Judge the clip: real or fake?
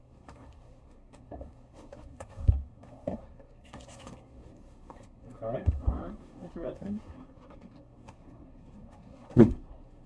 fake